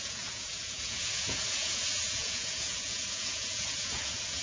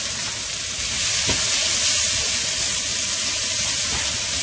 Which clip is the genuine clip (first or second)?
second